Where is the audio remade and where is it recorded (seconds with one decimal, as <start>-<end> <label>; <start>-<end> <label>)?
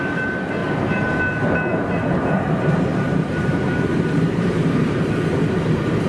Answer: 0.0-0.6 recorded; 0.6-1.2 remade; 1.2-1.7 recorded; 1.7-5.0 remade; 5.0-6.1 recorded